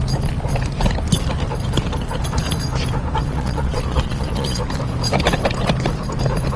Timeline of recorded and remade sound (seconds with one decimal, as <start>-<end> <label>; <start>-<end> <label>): 0.0-3.2 recorded; 3.2-4.6 remade; 4.6-6.6 recorded